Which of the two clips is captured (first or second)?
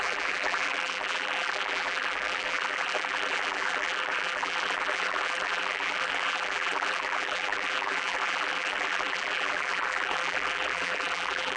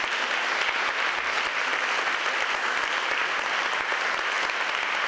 second